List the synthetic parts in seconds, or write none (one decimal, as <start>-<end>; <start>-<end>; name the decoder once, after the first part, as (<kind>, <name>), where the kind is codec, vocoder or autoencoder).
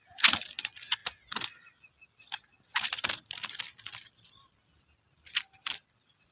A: none